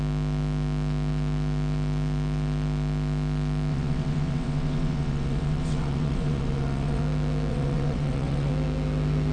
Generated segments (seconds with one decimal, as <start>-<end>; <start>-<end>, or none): 3.7-7.0; 7.5-8.5